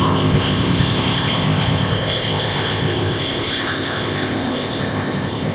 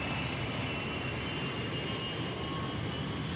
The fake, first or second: first